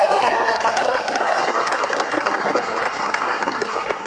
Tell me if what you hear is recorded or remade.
remade